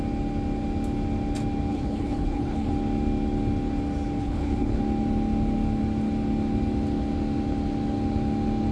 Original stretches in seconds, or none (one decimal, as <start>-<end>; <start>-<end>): 0.0-1.7; 2.7-4.2; 4.8-8.7